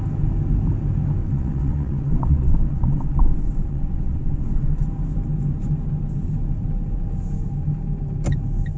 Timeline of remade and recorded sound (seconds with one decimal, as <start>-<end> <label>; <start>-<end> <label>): 0.0-1.2 recorded; 1.2-4.9 remade; 4.9-8.8 recorded